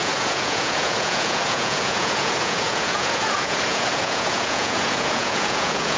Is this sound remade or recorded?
remade